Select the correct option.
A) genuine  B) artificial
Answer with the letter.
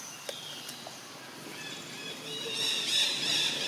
A